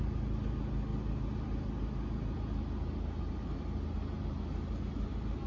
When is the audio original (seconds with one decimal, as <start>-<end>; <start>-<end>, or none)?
0.0-5.5